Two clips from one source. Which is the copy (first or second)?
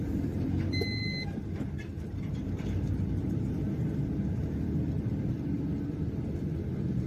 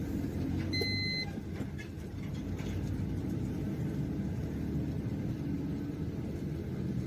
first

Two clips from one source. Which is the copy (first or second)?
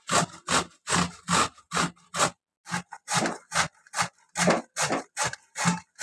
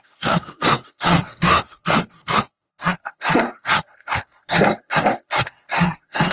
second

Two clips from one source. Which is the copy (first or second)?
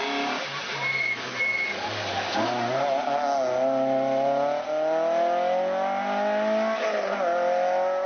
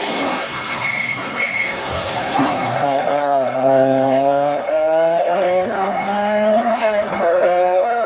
second